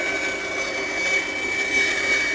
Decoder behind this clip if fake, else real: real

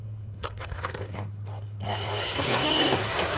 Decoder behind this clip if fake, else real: fake, codec, SNAC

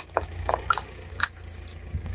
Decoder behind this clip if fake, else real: fake, codec, DAC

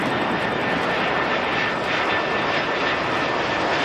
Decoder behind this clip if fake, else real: real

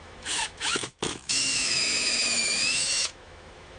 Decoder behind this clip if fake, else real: fake, autoencoder, DAC-VAE